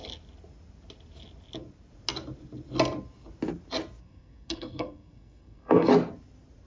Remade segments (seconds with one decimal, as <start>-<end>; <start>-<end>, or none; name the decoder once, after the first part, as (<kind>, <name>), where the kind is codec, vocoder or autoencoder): 4.0-5.9 (codec, SNAC)

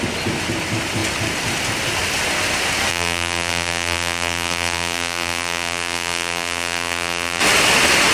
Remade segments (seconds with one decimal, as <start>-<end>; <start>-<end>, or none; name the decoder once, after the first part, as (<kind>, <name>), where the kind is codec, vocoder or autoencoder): 2.9-7.4 (vocoder, BigVGAN v2)

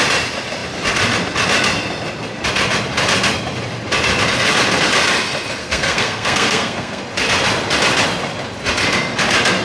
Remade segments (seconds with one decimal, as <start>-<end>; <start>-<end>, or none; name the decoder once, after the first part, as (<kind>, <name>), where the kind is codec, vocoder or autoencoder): 5.6-7.0 (codec, SNAC)